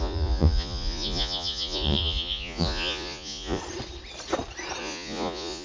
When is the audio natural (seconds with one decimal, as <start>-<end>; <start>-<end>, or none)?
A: 3.6-4.8